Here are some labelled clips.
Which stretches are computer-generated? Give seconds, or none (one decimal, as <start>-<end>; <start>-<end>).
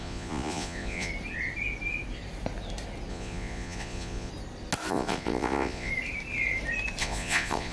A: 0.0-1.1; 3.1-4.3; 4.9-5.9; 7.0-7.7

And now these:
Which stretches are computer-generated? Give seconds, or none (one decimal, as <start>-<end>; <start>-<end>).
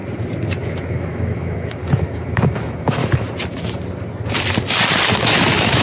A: 0.6-3.0; 5.2-5.8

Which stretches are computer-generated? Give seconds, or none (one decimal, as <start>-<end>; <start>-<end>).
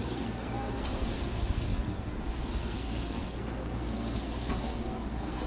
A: 0.0-5.5